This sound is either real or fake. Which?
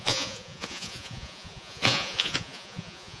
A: fake